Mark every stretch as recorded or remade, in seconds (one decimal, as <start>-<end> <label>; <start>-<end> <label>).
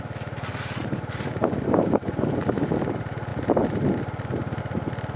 0.0-0.5 recorded; 0.5-2.7 remade; 2.7-5.2 recorded